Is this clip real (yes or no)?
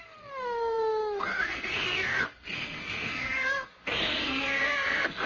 no